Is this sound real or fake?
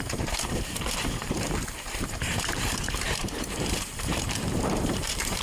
fake